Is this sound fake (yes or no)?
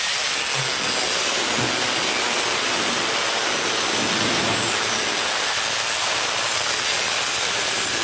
no